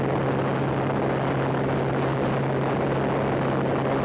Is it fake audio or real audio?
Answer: real